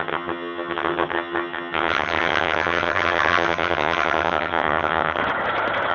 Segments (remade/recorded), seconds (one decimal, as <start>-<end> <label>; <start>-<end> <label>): 0.0-5.2 remade; 5.2-5.9 recorded